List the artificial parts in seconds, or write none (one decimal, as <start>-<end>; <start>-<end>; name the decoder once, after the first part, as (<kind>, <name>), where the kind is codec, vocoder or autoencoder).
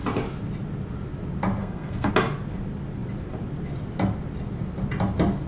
1.6-2.1 (codec, SNAC)